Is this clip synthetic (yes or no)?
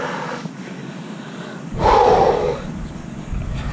yes